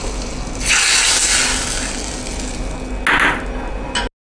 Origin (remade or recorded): recorded